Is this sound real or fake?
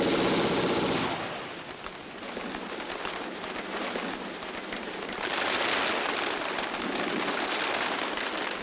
real